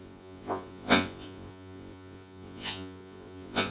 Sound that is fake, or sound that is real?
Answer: fake